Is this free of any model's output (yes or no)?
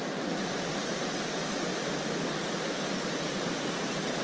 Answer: yes